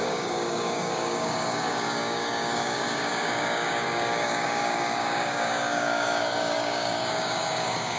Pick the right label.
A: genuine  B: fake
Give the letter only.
B